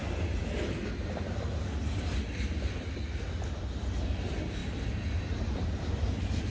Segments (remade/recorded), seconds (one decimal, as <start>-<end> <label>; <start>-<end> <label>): 0.0-6.5 recorded